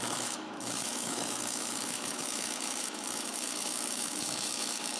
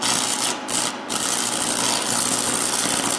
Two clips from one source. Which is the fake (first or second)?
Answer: first